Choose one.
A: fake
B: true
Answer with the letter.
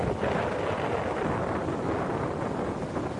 B